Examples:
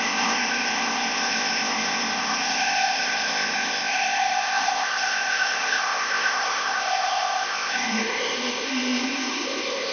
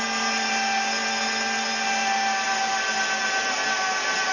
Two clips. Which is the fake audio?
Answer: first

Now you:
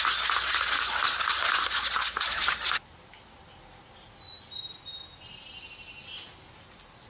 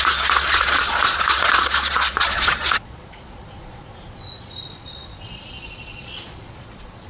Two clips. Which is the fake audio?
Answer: second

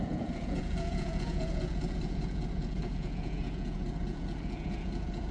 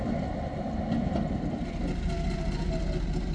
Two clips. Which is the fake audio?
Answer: first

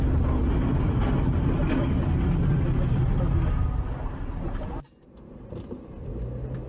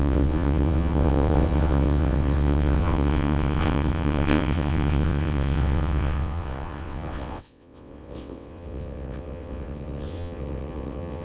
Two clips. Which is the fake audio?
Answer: second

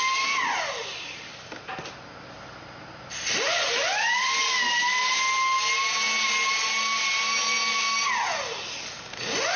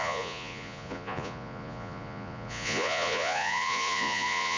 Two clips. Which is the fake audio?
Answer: second